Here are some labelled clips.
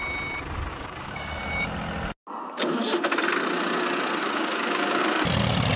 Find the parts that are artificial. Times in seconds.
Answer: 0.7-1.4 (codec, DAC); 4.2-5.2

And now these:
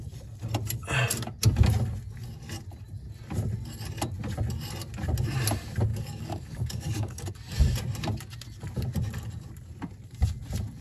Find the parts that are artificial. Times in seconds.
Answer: 5.9-7.3 (codec, DAC)

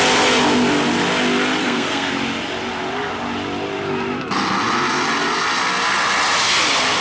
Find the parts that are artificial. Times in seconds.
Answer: 1.6-2.1 (codec, SNAC)

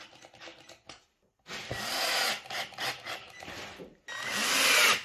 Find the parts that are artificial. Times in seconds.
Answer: none

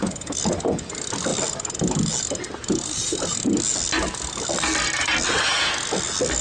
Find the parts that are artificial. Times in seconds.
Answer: 2.6-3.5 (vocoder, BigVGAN v2)

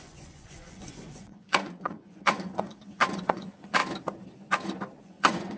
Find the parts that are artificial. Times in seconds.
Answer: 0.0-3.8 (vocoder, Vocos); 5.0-5.6

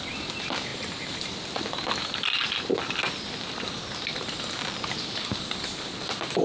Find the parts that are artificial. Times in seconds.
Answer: none

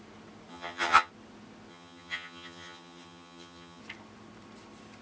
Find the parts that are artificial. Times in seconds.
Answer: 0.5-1.1 (vocoder, HiFi-GAN); 1.7-3.8